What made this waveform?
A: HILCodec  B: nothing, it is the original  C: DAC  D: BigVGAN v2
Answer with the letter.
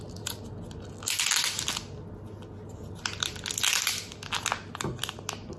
B